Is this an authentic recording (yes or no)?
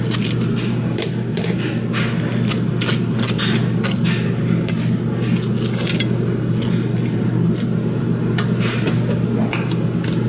yes